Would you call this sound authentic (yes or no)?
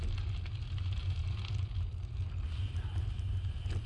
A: yes